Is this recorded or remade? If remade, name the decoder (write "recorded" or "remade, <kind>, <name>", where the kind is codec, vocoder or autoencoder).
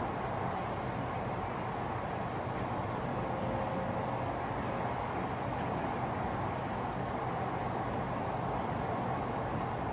recorded